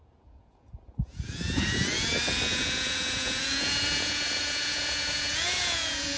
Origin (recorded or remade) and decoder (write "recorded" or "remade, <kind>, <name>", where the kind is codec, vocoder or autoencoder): remade, vocoder, Vocos